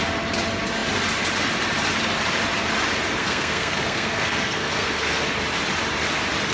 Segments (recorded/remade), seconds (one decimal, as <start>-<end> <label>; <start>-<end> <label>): 0.0-3.2 recorded; 3.2-5.2 remade; 5.2-6.5 recorded